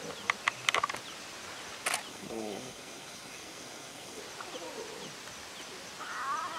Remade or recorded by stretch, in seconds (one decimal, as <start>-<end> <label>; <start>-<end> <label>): 0.0-2.1 recorded; 2.1-4.2 remade; 4.2-6.6 recorded